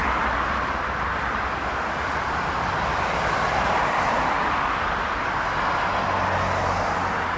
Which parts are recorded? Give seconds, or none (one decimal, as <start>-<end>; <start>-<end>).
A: 4.4-7.4